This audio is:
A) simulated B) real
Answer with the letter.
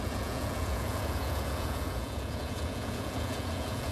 A